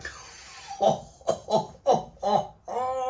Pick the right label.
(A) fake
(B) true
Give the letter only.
B